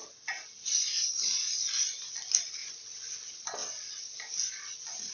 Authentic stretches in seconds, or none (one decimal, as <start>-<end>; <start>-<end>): 0.0-1.1; 2.6-3.2